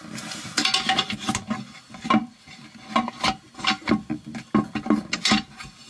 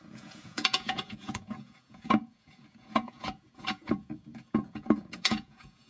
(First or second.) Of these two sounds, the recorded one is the first